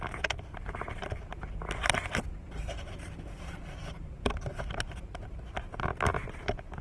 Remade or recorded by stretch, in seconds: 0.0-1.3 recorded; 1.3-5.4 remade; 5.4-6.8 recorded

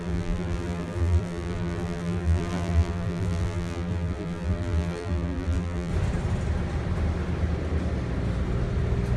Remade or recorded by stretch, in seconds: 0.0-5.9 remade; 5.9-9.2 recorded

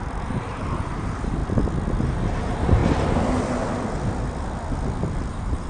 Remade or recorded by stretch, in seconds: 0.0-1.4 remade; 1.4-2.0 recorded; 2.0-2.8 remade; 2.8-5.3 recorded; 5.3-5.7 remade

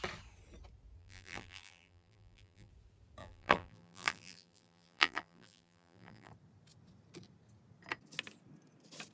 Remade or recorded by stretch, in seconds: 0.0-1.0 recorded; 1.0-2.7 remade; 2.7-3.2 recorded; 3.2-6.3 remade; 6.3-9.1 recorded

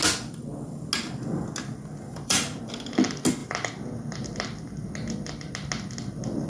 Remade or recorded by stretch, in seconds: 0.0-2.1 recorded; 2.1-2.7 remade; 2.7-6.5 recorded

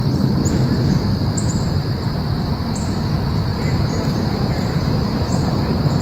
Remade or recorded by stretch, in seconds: 0.0-1.2 recorded; 1.2-2.4 remade; 2.4-3.5 recorded; 3.5-6.0 remade